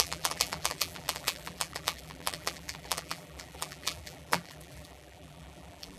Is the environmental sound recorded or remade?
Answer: remade